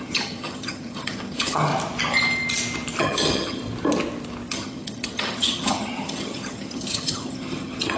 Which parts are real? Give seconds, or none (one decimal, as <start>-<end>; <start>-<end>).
1.7-3.0; 3.6-4.5